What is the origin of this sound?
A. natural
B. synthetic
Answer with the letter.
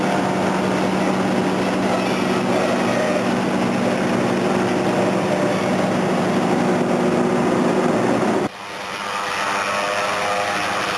A